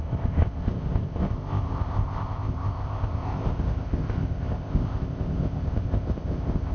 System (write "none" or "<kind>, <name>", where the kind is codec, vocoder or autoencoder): codec, ZipCodec